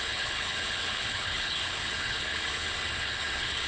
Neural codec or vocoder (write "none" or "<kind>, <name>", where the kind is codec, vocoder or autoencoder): codec, HILCodec